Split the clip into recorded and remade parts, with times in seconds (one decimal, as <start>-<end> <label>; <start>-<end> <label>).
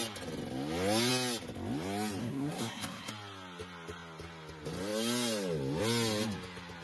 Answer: 0.0-2.2 recorded; 2.2-3.1 remade; 3.1-6.8 recorded